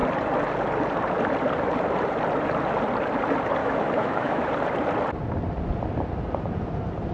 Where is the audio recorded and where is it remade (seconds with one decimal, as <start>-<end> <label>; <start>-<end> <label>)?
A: 0.0-3.6 recorded; 3.6-4.5 remade; 4.5-7.1 recorded